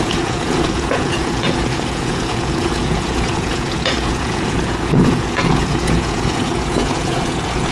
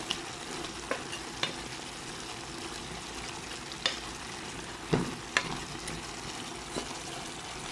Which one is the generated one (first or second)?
first